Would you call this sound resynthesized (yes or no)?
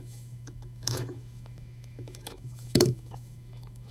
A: yes